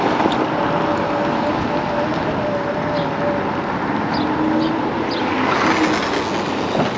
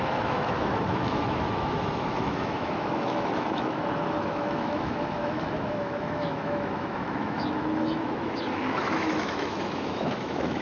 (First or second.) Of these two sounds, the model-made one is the second